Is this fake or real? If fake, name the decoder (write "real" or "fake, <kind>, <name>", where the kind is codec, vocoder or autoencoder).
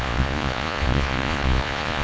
fake, vocoder, Vocos